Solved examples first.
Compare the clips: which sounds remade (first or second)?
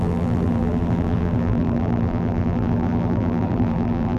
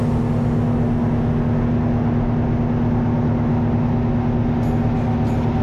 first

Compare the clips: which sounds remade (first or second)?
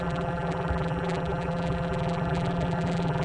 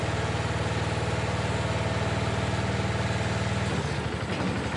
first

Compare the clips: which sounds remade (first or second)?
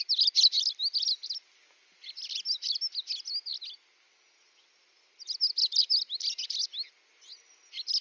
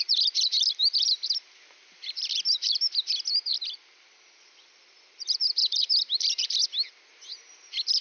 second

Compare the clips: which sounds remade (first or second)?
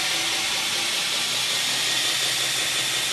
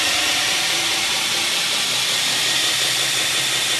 second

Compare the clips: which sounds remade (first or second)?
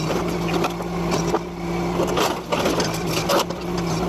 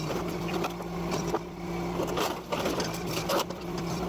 second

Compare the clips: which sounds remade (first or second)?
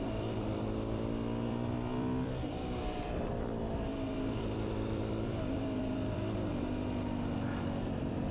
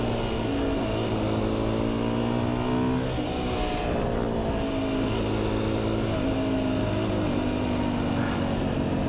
first